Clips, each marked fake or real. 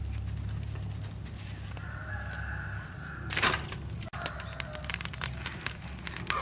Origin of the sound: real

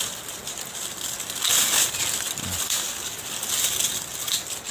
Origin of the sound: real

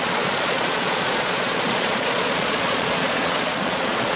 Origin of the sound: fake